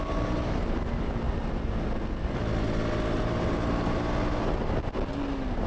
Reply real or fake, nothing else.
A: real